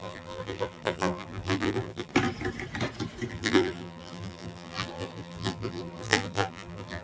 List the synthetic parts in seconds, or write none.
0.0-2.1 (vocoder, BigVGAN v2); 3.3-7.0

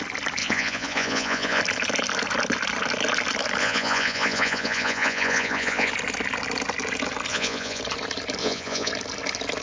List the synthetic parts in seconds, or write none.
0.4-1.6 (vocoder, Vocos); 3.6-5.9; 7.3-7.8; 8.4-8.9